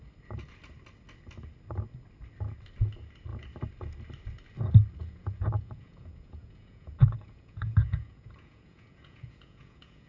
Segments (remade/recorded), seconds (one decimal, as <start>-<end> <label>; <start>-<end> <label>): 0.0-5.0 recorded; 5.0-10.1 remade